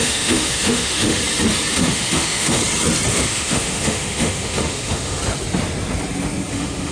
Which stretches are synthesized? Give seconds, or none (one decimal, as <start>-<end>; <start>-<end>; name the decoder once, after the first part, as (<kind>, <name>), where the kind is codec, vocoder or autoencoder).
0.0-1.2 (autoencoder, DAC-VAE); 1.7-2.6; 3.1-5.2; 6.5-6.9